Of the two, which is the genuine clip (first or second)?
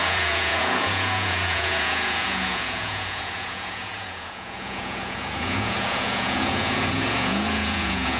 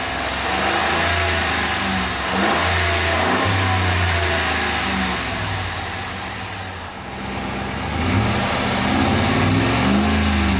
second